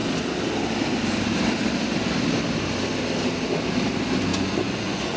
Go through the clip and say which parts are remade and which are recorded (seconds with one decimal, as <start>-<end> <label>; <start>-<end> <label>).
0.0-4.3 recorded; 4.3-5.2 remade